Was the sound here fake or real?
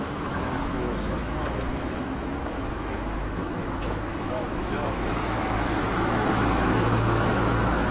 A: fake